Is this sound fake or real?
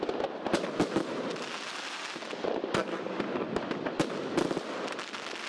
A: real